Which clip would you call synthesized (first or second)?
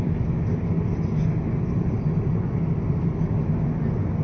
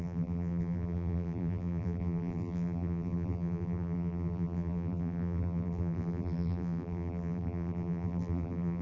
second